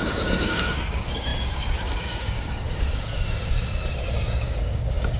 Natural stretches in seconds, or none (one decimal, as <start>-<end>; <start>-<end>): none